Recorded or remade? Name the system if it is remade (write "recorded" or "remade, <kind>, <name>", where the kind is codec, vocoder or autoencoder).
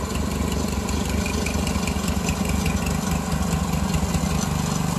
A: recorded